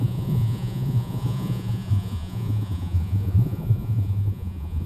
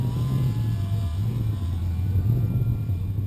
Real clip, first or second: second